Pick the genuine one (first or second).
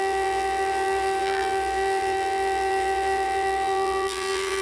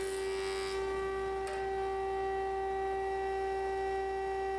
second